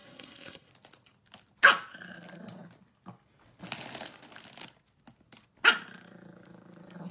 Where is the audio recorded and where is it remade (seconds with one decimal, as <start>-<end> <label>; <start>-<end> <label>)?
0.0-0.7 remade; 0.7-7.1 recorded